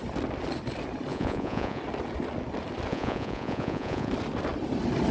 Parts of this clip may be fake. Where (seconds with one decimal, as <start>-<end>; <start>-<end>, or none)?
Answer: 1.1-1.8; 2.9-4.1

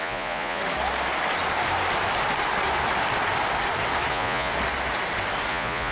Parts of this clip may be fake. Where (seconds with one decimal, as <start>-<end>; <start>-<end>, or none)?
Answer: 0.0-0.6; 4.1-4.5; 5.5-5.9

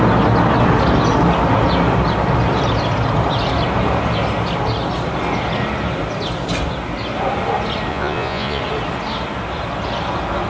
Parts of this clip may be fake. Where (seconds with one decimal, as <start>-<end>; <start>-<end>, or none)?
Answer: 7.9-8.6

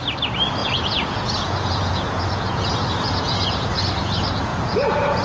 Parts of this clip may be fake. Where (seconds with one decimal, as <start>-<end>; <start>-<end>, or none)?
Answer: 0.6-3.7; 4.5-5.2

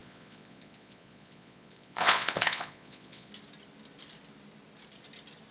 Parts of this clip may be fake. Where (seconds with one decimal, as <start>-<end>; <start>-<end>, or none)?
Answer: 0.0-3.3

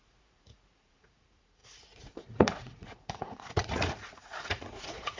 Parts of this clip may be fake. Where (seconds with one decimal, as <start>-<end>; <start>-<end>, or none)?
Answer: 0.0-5.2

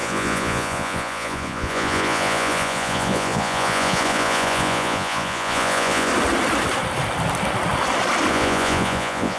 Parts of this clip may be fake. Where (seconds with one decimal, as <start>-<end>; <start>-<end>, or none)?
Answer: 0.0-6.1; 8.3-9.4

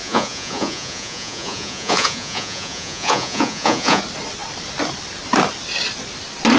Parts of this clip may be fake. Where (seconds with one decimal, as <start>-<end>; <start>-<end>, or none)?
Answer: 0.0-4.0